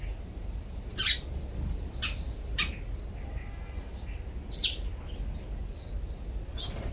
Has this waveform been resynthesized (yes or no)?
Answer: no